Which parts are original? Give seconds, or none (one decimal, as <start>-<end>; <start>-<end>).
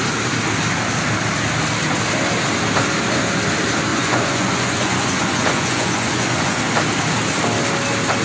0.0-3.9; 6.6-8.2